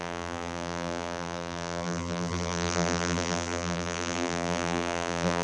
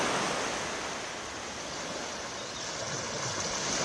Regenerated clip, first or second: first